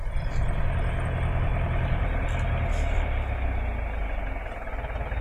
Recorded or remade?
recorded